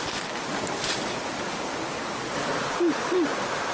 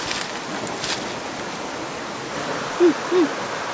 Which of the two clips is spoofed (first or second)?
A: first